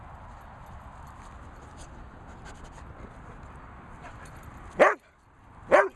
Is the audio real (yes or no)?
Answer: yes